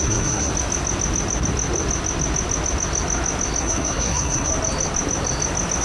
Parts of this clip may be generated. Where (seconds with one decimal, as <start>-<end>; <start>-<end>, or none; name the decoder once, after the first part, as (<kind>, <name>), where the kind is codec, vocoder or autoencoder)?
0.0-0.5 (codec, SNAC); 3.6-4.5